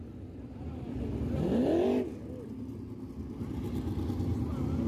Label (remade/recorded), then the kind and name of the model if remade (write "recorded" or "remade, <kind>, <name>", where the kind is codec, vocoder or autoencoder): recorded